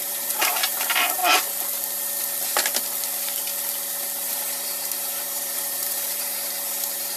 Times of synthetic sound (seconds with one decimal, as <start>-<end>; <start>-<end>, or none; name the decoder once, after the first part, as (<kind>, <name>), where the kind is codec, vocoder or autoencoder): 0.0-1.2 (vocoder, BigVGAN v2); 4.3-7.2